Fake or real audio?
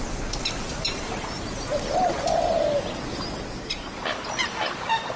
real